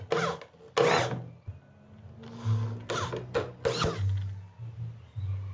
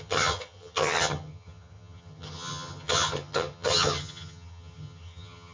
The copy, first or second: second